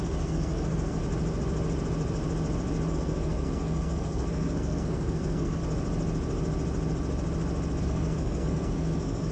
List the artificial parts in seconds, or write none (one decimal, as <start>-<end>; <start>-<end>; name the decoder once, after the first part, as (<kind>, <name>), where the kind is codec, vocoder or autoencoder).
0.0-1.0 (codec, SNAC); 2.9-5.6; 7.8-9.3